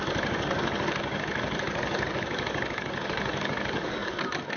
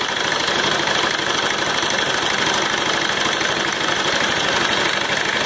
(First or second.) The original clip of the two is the second